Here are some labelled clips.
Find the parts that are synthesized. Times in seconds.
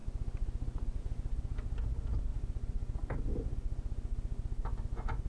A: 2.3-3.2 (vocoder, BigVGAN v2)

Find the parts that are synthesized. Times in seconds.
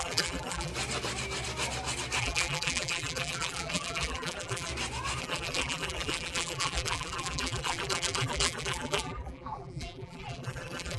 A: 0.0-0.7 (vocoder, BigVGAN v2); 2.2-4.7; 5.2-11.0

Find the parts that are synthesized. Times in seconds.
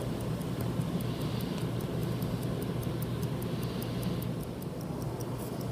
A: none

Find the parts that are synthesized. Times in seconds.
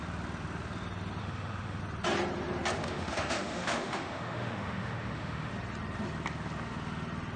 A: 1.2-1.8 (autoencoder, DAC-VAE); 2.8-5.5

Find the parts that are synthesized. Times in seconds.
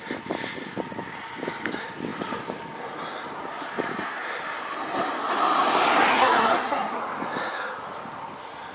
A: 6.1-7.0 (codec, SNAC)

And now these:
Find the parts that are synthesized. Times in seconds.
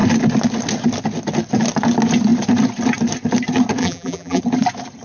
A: 3.8-4.4 (vocoder, BigVGAN v2)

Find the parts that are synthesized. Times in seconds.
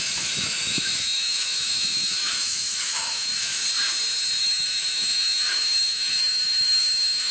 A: 0.0-3.6 (autoencoder, DAC-VAE); 4.4-7.3